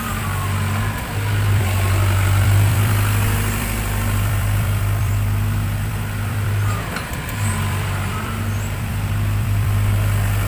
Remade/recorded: remade